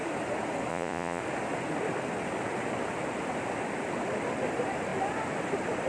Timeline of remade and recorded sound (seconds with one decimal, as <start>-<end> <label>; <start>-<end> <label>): 0.0-0.7 recorded; 0.7-1.2 remade; 1.2-5.9 recorded